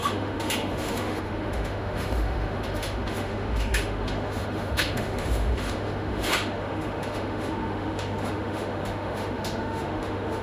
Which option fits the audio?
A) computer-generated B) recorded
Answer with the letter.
A